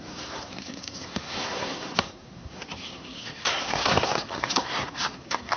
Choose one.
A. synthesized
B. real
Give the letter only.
A